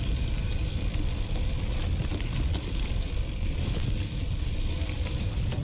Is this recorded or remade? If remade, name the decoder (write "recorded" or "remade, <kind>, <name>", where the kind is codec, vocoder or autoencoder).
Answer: recorded